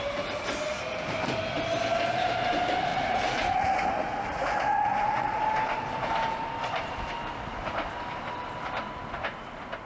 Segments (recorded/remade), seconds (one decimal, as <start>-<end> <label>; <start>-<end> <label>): 0.0-2.9 recorded; 2.9-5.4 remade; 5.4-9.9 recorded